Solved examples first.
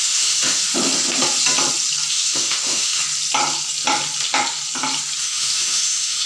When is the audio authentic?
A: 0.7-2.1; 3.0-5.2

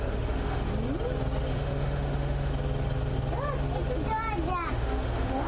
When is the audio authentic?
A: 0.7-1.5; 2.5-4.7

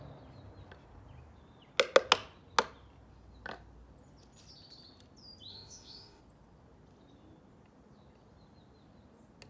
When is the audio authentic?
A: 0.0-5.5; 6.2-9.5